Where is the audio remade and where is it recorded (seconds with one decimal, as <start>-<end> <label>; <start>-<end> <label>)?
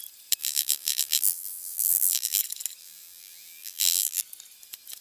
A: 0.0-0.4 recorded; 0.4-2.4 remade; 2.4-2.8 recorded; 2.8-4.2 remade; 4.2-5.0 recorded